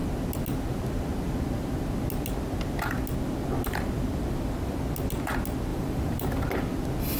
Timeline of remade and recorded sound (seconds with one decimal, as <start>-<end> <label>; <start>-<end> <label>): 0.0-5.7 recorded; 5.7-6.6 remade; 6.6-7.2 recorded